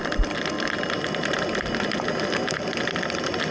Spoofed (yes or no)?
no